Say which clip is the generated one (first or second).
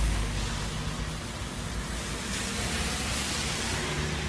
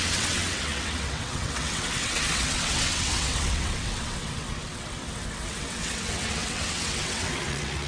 second